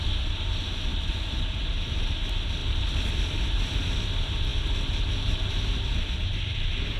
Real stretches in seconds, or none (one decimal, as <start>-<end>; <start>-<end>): 0.0-7.0